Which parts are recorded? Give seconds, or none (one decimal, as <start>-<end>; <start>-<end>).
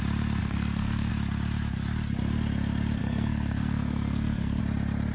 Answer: 0.0-0.4; 1.1-3.0; 4.6-5.1